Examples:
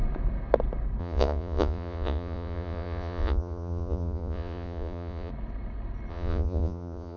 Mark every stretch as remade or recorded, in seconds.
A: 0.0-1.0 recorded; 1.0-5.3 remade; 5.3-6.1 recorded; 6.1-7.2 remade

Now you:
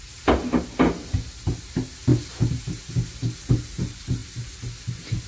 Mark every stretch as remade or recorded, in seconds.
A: 0.0-5.3 recorded

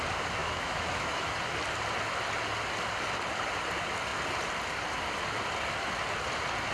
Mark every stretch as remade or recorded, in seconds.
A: 0.0-0.4 recorded; 0.4-1.3 remade; 1.3-6.7 recorded